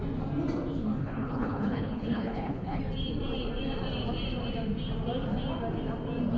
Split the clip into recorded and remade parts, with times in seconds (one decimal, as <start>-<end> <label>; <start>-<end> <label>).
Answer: 0.0-1.0 recorded; 1.0-2.8 remade; 2.8-6.4 recorded